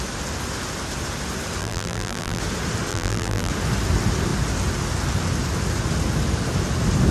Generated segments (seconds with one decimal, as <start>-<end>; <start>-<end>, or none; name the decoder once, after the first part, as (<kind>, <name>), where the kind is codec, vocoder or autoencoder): 1.6-2.4 (vocoder, BigVGAN v2); 2.9-3.5